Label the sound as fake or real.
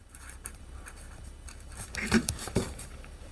fake